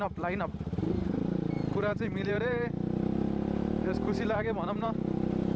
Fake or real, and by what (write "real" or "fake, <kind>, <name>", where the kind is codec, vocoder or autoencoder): fake, vocoder, BigVGAN v2